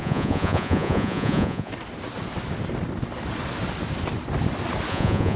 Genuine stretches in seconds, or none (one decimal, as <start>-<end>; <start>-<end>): 1.7-4.9